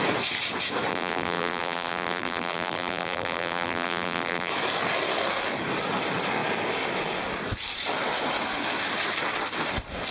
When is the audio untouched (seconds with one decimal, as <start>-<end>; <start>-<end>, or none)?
0.0-0.9; 4.5-10.1